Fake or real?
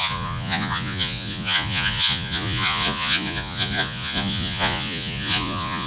fake